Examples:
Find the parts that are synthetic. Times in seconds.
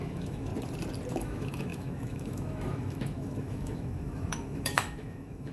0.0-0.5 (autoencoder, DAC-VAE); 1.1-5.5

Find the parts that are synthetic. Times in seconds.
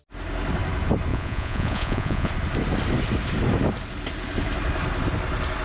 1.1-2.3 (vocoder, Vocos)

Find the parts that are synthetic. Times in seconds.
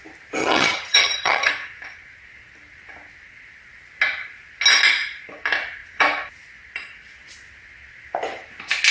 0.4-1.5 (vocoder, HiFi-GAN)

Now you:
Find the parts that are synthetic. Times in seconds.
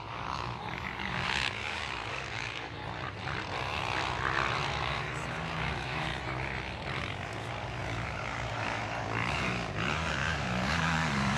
0.0-2.8 (codec, DAC); 4.8-6.1; 7.0-11.4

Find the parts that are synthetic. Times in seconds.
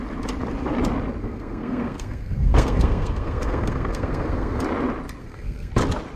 1.2-4.6 (codec, SNAC); 5.2-5.7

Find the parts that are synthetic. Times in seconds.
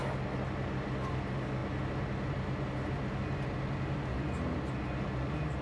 none